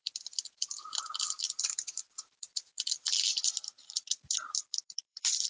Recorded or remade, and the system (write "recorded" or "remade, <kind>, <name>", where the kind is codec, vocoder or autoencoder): remade, vocoder, BigVGAN v2